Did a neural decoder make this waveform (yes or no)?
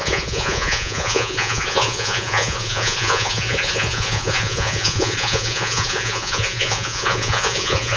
yes